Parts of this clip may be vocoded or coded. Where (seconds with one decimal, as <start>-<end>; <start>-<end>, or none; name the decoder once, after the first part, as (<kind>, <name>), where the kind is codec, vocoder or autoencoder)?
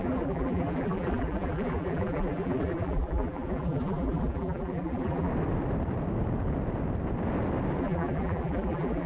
0.0-5.3 (vocoder, BigVGAN v2); 7.8-9.1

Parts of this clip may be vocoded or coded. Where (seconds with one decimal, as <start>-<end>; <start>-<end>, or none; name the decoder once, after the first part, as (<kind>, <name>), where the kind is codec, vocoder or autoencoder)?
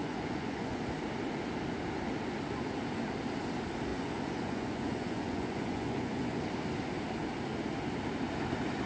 0.0-0.8 (vocoder, Vocos); 3.9-6.4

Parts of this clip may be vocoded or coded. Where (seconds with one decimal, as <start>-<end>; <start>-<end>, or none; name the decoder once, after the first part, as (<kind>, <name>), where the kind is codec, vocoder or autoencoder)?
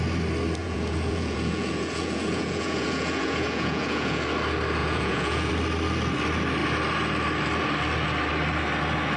0.6-4.2 (vocoder, Vocos); 4.8-5.5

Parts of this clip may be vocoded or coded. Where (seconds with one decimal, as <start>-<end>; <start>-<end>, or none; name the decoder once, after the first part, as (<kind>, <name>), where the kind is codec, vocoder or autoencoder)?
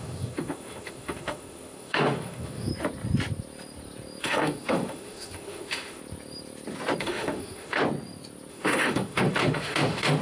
0.0-2.7 (autoencoder, DAC-VAE); 4.2-6.0; 7.0-7.8; 8.5-10.2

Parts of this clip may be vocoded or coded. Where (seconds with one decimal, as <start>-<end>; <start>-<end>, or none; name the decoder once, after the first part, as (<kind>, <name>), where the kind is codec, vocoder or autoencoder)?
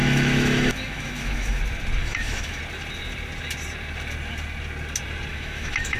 0.0-1.6 (autoencoder, DAC-VAE); 2.0-2.6; 5.3-6.0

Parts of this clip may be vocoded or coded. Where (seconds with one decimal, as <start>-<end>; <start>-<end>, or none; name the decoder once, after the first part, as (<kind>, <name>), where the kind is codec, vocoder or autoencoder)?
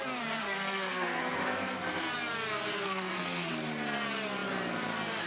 0.4-2.0 (codec, SNAC); 2.7-3.5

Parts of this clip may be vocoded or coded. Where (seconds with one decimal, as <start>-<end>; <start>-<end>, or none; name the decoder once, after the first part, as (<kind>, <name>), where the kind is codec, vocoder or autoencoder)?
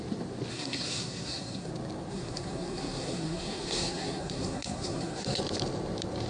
0.5-1.7 (codec, SNAC); 2.1-5.4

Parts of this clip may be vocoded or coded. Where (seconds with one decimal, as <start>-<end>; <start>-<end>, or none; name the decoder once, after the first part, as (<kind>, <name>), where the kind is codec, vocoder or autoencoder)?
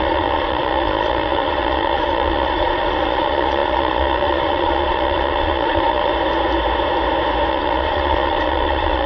0.0-6.1 (vocoder, Vocos); 7.5-9.1